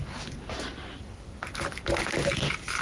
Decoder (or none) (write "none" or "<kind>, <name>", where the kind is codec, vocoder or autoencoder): none